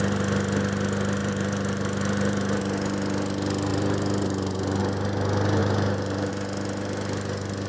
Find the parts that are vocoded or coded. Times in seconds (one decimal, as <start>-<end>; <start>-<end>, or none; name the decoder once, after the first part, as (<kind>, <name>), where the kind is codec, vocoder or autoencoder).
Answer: 1.2-2.6 (vocoder, BigVGAN v2); 3.7-4.8; 5.6-6.3